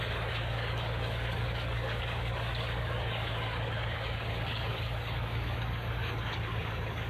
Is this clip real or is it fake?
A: fake